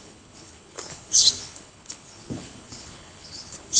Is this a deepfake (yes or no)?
yes